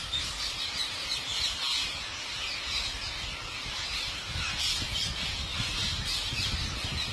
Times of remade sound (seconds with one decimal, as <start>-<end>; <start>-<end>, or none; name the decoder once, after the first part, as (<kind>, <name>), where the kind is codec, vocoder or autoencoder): 0.0-1.3 (vocoder, BigVGAN v2); 3.8-7.1